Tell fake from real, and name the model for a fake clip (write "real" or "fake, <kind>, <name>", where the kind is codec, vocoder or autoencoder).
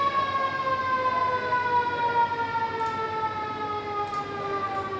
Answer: real